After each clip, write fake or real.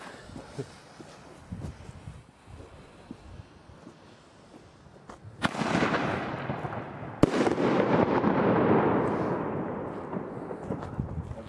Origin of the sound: real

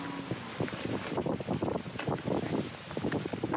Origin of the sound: real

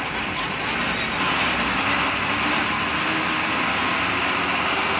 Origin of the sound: real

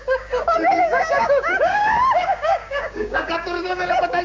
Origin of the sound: fake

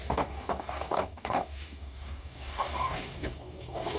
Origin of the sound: fake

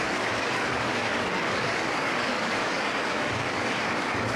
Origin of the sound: fake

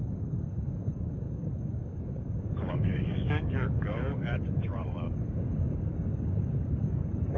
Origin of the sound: fake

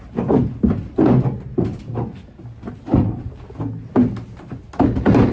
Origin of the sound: real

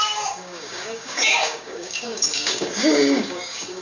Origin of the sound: fake